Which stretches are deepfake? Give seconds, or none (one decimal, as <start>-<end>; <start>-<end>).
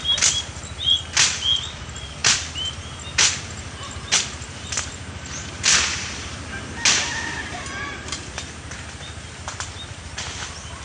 none